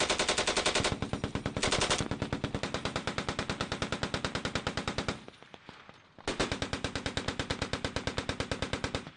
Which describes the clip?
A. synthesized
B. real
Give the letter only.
B